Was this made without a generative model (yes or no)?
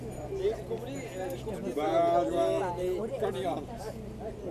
yes